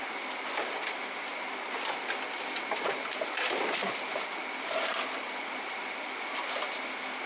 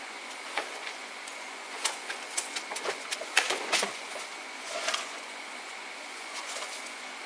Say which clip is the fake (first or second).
second